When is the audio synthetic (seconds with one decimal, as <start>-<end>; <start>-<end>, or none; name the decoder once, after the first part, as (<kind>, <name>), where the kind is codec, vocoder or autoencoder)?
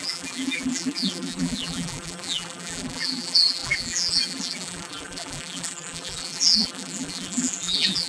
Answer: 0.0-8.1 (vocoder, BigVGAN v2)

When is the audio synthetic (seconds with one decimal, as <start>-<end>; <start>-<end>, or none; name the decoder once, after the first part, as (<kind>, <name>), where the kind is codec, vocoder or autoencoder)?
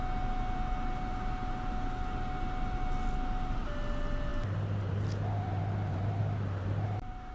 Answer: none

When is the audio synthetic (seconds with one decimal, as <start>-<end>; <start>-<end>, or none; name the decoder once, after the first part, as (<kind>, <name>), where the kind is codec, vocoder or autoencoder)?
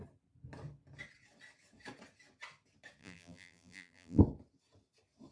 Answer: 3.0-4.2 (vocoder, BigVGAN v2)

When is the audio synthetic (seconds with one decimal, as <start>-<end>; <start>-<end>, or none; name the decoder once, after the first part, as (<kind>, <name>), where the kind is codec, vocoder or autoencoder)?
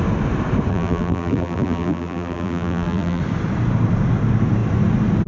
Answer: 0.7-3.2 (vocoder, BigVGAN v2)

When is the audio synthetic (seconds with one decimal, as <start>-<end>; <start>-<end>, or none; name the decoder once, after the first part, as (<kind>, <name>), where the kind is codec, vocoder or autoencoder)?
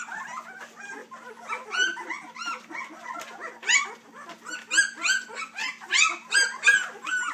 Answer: none